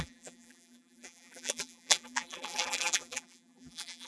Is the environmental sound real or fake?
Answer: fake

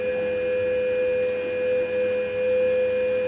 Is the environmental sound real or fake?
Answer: real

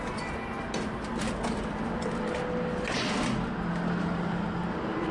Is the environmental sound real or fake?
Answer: real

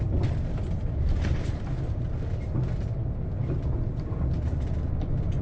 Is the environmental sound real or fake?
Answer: real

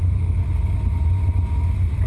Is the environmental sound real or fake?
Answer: real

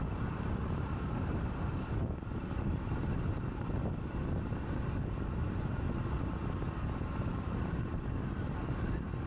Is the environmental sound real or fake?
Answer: real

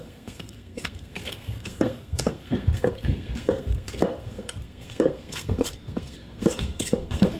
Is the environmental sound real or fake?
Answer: fake